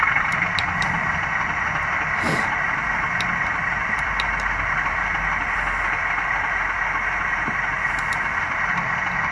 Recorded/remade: recorded